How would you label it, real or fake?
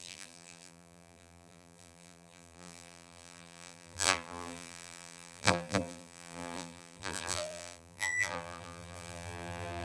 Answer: fake